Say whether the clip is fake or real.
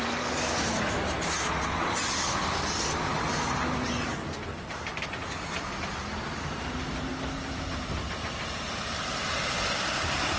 real